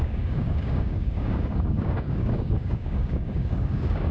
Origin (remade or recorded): remade